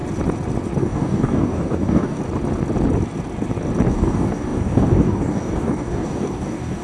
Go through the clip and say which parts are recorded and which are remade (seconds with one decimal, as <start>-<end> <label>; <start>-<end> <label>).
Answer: 0.0-0.8 recorded; 0.8-2.2 remade; 2.2-3.9 recorded; 3.9-6.8 remade